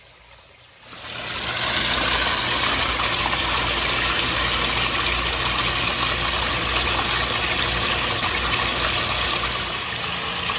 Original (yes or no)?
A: yes